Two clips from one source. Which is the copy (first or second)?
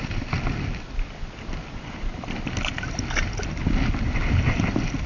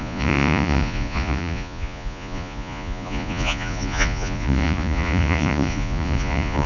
second